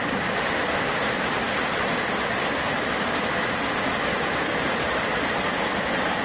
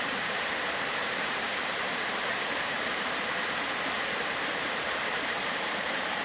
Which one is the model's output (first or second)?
second